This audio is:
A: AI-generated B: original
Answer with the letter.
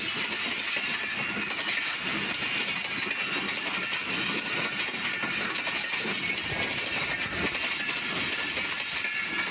B